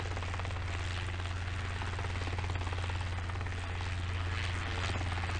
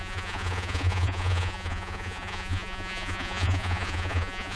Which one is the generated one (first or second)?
second